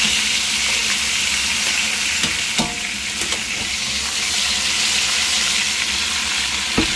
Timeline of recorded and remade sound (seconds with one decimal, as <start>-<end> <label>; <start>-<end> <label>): 0.0-7.0 recorded

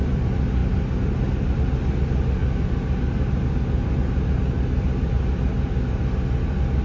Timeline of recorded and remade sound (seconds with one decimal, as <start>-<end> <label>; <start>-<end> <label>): 0.0-6.8 recorded

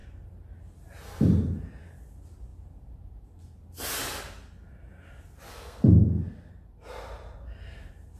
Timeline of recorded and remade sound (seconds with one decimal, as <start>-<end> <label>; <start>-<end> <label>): 0.0-5.5 recorded; 5.5-6.5 remade; 6.5-8.2 recorded

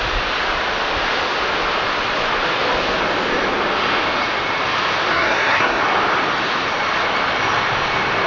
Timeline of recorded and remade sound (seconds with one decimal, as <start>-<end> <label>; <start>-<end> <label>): 0.0-5.1 recorded; 5.1-5.8 remade; 5.8-8.3 recorded

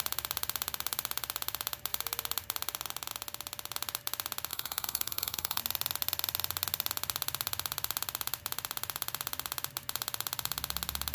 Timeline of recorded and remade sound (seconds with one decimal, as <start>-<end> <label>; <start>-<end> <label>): 0.0-4.5 recorded; 4.5-5.6 remade; 5.6-11.1 recorded

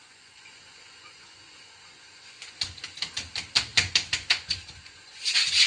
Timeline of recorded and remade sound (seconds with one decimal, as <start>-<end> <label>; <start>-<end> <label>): 0.0-2.8 remade; 2.8-3.7 recorded; 3.7-5.2 remade; 5.2-5.7 recorded